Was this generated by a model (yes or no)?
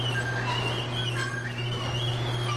no